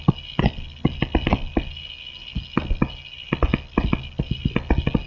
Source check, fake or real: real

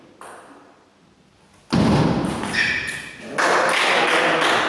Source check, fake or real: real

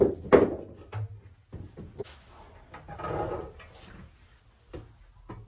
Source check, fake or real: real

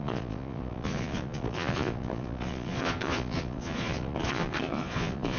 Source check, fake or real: fake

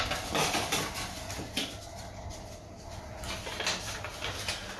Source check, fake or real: real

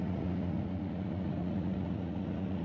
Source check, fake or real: fake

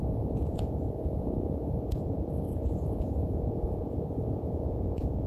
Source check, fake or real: fake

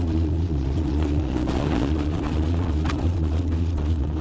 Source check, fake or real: fake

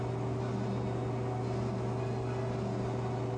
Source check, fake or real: real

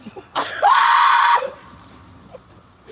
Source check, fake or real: fake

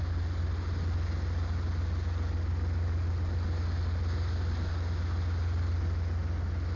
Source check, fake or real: real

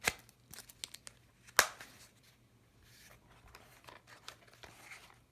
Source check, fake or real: real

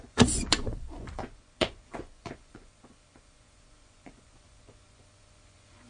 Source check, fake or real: fake